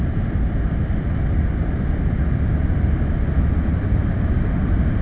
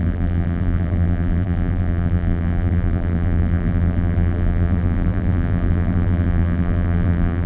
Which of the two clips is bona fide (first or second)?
first